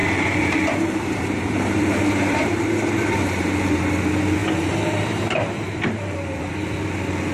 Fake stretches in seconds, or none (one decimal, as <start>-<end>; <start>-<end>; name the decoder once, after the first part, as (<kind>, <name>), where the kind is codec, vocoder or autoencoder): 0.0-3.9 (vocoder, BigVGAN v2); 4.4-6.5